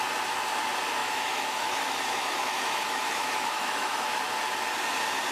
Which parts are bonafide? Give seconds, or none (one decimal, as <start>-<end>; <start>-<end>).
0.0-1.0; 4.2-5.3